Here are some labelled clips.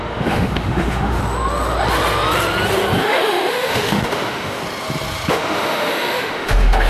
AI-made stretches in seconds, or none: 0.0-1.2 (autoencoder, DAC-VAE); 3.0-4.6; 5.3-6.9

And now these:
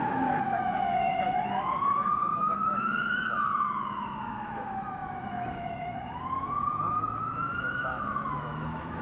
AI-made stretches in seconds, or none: 0.0-9.0 (autoencoder, DAC-VAE)

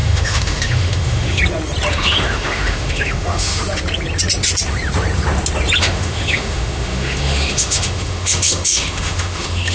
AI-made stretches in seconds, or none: 0.0-1.4 (autoencoder, DAC-VAE); 1.9-3.6; 5.8-9.7

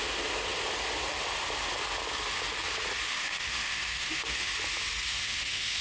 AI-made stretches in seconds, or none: 3.1-4.5 (autoencoder, DAC-VAE); 5.1-5.8

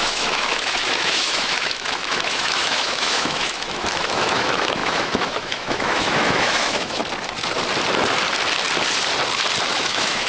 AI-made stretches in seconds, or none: 0.0-7.0 (autoencoder, DAC-VAE); 9.7-10.3

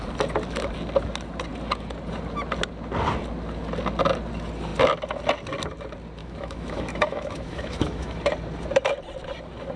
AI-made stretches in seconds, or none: 6.2-8.2 (autoencoder, DAC-VAE)

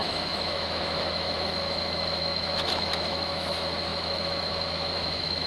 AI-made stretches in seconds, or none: 0.0-5.5 (autoencoder, DAC-VAE)